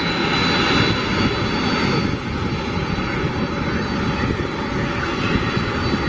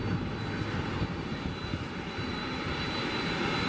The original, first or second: first